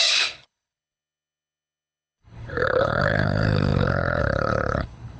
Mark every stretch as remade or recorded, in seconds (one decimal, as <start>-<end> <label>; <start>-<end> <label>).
0.0-5.2 remade